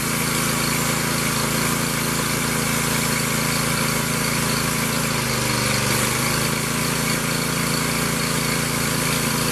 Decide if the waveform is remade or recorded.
recorded